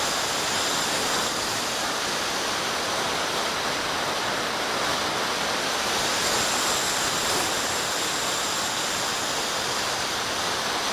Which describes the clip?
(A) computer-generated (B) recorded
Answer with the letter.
B